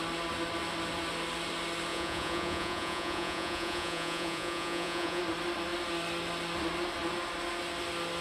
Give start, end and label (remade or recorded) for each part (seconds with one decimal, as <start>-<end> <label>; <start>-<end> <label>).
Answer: 0.0-1.9 recorded; 1.9-5.2 remade; 5.2-8.2 recorded